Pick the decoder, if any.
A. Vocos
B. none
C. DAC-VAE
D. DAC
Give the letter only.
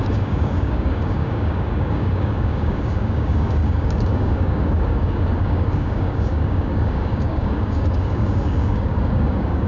D